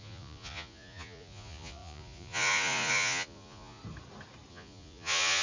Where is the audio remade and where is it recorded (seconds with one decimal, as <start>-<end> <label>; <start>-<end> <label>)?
0.0-3.8 remade; 3.8-4.5 recorded; 4.5-5.4 remade